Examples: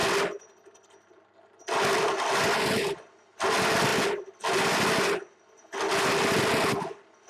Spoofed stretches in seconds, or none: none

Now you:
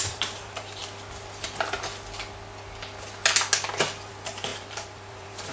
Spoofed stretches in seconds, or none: 0.0-0.8 (vocoder, BigVGAN v2); 4.1-5.5